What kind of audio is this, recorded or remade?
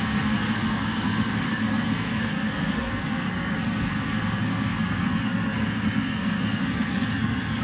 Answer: remade